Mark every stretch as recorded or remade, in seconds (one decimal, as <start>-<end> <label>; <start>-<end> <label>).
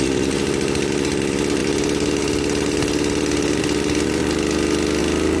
0.0-5.4 recorded